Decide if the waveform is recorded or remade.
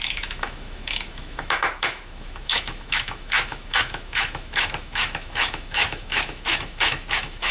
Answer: remade